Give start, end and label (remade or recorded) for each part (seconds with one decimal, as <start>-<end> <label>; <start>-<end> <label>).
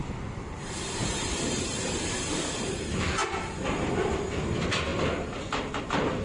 0.0-3.2 remade; 3.2-4.3 recorded; 4.3-4.9 remade; 4.9-5.8 recorded; 5.8-6.2 remade